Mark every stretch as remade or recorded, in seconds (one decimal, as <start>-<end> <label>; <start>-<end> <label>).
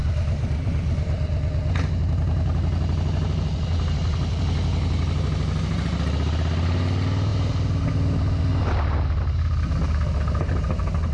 0.0-11.1 recorded